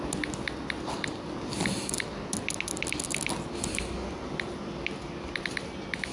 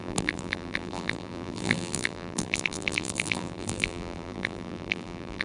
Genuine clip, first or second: first